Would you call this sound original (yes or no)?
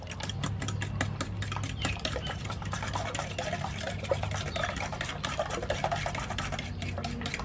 yes